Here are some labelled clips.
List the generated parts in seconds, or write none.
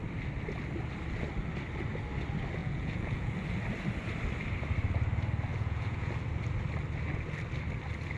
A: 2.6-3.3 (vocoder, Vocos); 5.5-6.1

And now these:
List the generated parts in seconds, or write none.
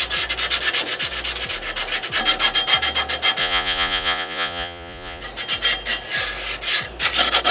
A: 3.4-5.2 (vocoder, Vocos)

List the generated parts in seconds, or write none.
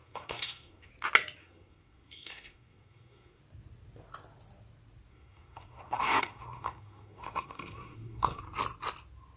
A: 0.0-0.9 (codec, SNAC); 1.4-3.4; 5.1-8.4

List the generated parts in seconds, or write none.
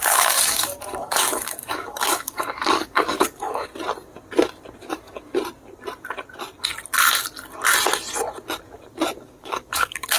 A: 0.0-3.7 (codec, DAC); 4.8-5.3; 9.2-10.2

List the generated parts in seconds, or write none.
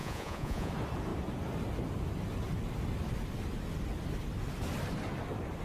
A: 0.0-0.7 (vocoder, Vocos)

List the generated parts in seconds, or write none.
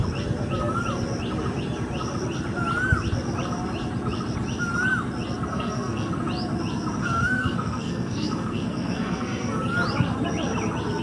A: 5.5-6.1 (codec, SNAC); 7.0-9.6